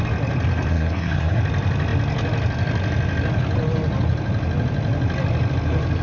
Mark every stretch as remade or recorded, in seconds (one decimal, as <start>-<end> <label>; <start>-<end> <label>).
0.0-0.7 recorded; 0.7-1.4 remade; 1.4-6.0 recorded